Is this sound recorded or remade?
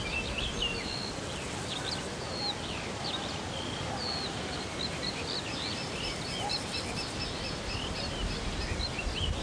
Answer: recorded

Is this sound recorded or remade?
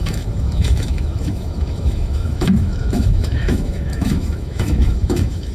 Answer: remade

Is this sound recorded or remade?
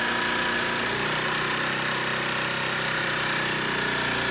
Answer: recorded